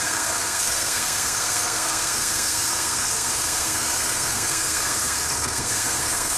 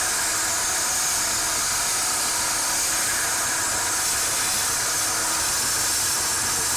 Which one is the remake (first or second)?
first